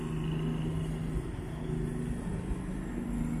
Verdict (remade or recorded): recorded